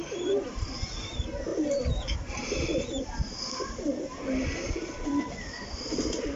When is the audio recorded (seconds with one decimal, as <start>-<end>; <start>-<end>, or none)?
0.0-6.4